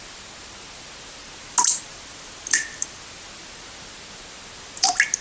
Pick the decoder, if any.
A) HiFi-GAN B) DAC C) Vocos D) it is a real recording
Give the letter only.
D